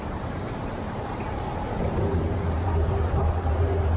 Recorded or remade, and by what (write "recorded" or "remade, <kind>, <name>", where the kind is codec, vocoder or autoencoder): remade, vocoder, BigVGAN v2